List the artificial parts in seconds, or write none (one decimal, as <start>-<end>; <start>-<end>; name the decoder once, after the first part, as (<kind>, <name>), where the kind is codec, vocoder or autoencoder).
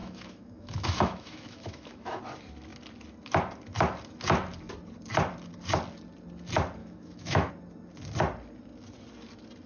0.0-2.2 (autoencoder, DAC-VAE); 6.8-7.5